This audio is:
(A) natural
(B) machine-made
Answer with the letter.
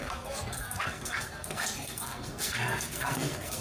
B